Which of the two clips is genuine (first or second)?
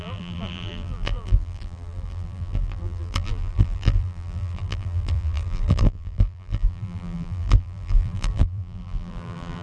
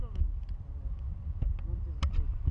second